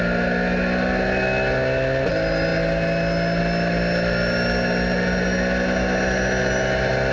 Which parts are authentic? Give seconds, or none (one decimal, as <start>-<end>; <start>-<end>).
0.0-7.1